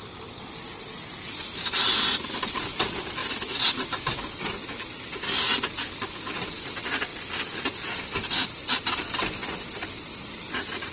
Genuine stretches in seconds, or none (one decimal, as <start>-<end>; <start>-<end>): 0.0-10.9

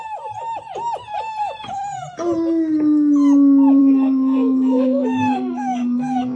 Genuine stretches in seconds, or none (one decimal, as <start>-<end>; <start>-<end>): 0.0-3.8

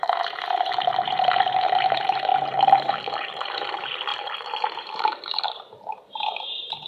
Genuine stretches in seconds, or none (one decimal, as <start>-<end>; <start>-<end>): none

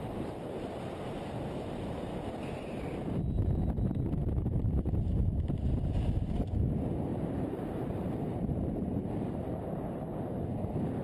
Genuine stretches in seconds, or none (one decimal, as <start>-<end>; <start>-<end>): 0.0-4.2; 5.3-7.1; 10.2-11.0

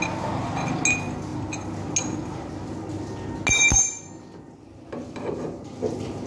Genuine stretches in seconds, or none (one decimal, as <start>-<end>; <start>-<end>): 0.0-6.3

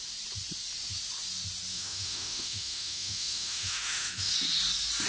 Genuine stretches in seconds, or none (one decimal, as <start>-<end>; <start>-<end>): 0.0-1.7; 4.3-5.1